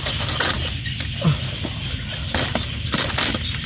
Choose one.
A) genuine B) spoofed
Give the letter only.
A